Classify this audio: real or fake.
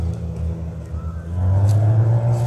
real